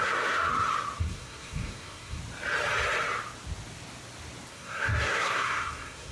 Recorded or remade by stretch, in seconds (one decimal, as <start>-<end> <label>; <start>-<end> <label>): 0.0-0.5 remade; 0.5-1.0 recorded; 1.0-2.2 remade; 2.2-4.5 recorded; 4.5-6.1 remade

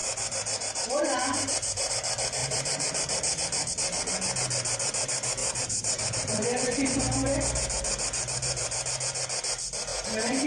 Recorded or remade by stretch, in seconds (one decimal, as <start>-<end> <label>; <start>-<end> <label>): 0.0-1.9 remade; 1.9-2.4 recorded; 2.4-3.7 remade; 3.7-5.4 recorded; 5.4-7.0 remade; 7.0-9.9 recorded; 9.9-10.5 remade